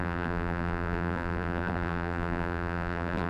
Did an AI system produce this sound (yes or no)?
yes